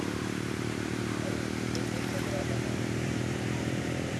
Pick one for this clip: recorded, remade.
remade